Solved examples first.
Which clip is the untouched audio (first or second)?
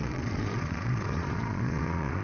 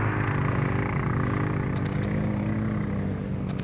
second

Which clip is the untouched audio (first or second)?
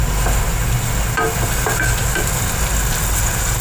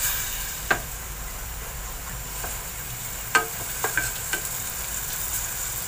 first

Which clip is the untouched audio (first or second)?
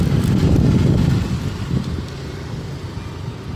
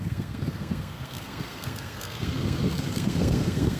first